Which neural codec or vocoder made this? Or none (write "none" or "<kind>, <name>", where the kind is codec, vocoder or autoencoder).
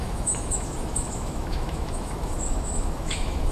autoencoder, DAC-VAE